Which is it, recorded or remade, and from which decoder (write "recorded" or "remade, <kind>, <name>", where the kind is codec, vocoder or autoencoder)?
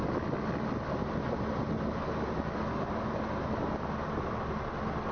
recorded